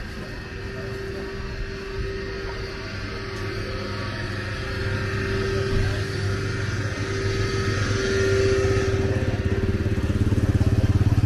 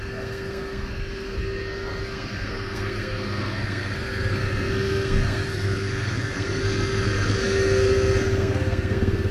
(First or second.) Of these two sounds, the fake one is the second